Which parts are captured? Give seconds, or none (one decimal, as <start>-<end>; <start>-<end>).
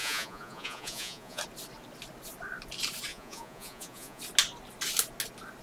1.4-3.1; 4.2-5.6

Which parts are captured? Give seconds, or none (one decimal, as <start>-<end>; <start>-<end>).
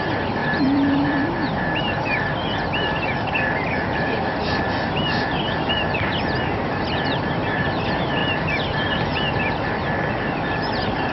0.0-11.1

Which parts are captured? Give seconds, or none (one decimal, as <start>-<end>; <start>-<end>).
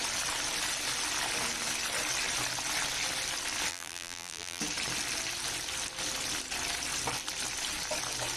0.0-3.7; 4.6-8.4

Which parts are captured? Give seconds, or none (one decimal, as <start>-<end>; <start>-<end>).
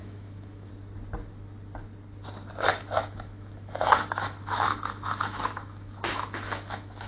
0.7-2.7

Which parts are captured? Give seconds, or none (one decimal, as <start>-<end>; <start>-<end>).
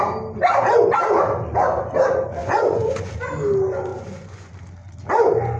0.0-2.4; 3.1-3.9; 4.5-5.6